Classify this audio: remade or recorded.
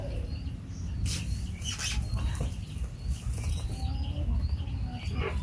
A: recorded